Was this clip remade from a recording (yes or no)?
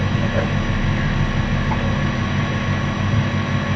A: no